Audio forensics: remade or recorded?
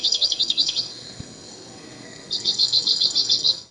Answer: remade